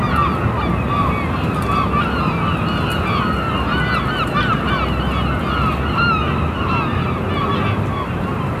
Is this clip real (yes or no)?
yes